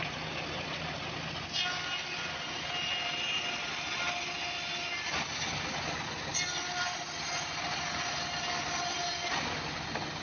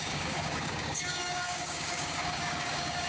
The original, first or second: first